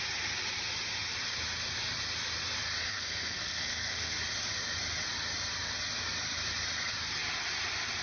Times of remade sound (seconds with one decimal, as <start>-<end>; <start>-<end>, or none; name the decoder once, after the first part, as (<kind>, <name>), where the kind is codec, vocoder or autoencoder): 2.8-4.2 (codec, SNAC)

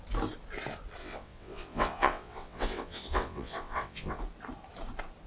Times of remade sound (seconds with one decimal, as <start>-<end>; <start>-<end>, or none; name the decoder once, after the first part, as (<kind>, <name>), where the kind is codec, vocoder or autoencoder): 1.0-4.2 (vocoder, WaveNeXt)

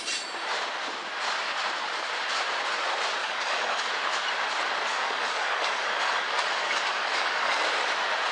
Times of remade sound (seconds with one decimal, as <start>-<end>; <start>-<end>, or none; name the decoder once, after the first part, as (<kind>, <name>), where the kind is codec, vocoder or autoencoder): 3.2-3.9 (codec, DAC); 4.9-7.6